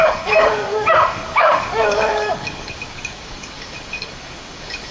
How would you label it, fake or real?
fake